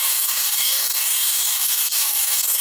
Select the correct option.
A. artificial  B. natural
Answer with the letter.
A